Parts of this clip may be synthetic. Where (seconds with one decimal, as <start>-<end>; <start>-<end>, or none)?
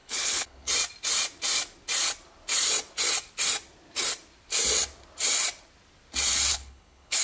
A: 0.0-0.7; 6.5-7.2